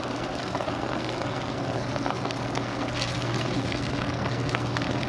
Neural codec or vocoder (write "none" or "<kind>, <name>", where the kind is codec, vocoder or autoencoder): codec, SNAC